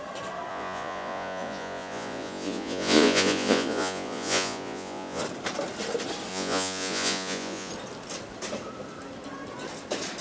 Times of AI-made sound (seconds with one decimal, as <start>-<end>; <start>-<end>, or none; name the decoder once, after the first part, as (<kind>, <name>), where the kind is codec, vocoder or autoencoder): 0.5-5.2 (vocoder, Vocos); 6.3-7.7